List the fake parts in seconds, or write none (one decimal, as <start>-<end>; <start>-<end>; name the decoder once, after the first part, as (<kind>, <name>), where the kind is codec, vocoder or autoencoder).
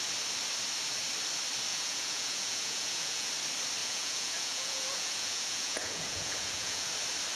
1.7-3.3 (vocoder, Vocos); 3.8-6.9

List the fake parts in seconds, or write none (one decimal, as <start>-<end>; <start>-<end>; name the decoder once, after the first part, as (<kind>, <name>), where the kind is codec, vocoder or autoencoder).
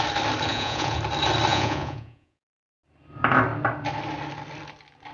0.5-1.0 (vocoder, Vocos); 1.5-2.7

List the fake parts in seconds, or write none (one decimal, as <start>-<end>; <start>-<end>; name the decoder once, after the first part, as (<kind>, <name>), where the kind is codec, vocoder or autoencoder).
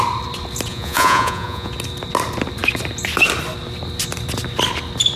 0.7-1.7 (vocoder, Vocos)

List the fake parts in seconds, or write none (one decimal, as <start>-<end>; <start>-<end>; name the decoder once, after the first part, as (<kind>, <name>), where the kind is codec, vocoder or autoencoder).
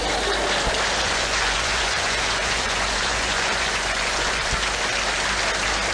1.0-4.5 (vocoder, Vocos)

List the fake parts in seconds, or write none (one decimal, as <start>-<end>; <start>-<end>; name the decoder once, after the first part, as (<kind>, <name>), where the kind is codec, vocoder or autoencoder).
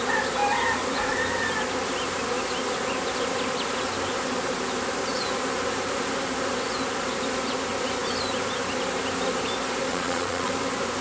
9.9-10.5 (vocoder, Vocos)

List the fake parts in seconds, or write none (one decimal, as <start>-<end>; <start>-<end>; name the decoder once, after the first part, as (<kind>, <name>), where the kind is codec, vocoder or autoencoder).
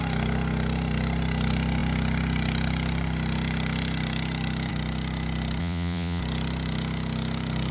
5.6-6.2 (vocoder, Vocos)